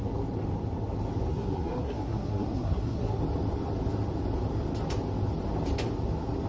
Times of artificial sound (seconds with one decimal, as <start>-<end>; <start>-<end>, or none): 1.3-3.2